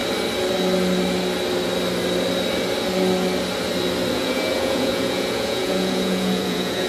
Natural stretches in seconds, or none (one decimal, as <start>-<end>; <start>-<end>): 0.0-4.1